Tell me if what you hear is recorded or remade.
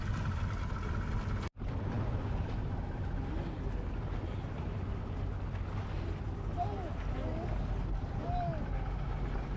recorded